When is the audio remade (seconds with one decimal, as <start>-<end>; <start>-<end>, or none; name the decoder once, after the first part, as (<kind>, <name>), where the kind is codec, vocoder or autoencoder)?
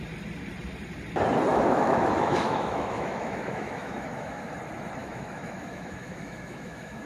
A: 1.5-4.5 (autoencoder, DAC-VAE); 5.0-7.1